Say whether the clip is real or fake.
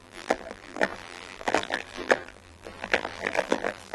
fake